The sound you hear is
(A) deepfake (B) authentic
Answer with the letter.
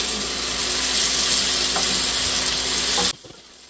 B